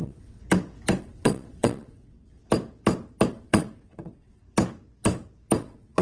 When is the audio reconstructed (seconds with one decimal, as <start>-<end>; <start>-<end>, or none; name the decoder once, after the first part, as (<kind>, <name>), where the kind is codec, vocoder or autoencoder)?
0.0-0.4 (vocoder, WaveNeXt); 1.0-2.4; 3.3-4.4; 5.6-6.0